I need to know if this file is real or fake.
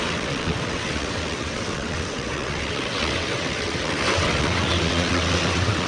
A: fake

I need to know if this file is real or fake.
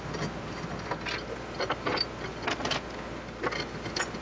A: real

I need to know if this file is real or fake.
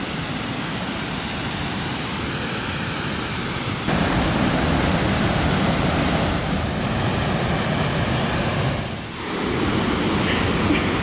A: real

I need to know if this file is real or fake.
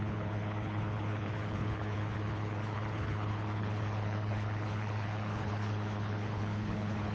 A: fake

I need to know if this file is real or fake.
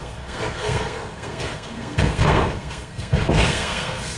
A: fake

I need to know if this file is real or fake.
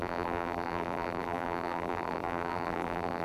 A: fake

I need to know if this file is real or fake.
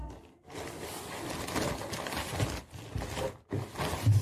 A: real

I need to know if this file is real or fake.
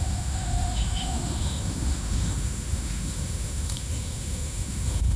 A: fake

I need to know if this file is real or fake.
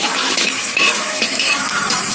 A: fake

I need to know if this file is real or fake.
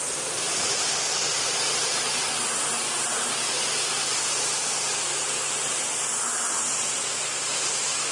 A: real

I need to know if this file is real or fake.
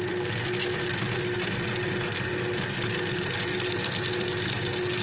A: real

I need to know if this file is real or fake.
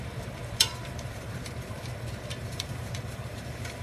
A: fake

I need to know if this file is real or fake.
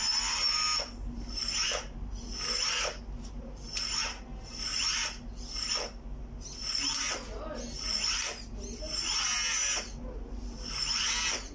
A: real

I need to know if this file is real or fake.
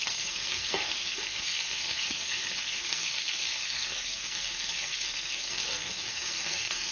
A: fake